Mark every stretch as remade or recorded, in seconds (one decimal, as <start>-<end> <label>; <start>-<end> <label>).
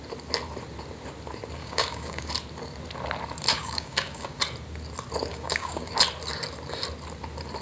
0.0-1.6 recorded; 1.6-2.3 remade; 2.3-3.5 recorded; 3.5-4.4 remade; 4.4-5.3 recorded; 5.3-5.9 remade; 5.9-7.6 recorded